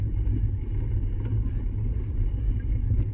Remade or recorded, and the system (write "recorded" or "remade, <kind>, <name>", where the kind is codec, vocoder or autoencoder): recorded